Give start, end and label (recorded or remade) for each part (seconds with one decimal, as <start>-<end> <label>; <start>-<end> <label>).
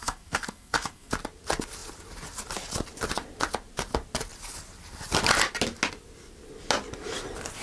0.0-1.1 remade; 1.1-7.6 recorded